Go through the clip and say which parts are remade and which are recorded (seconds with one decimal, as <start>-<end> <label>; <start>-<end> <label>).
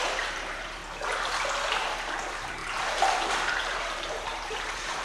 0.0-0.8 remade; 0.8-1.7 recorded; 1.7-5.0 remade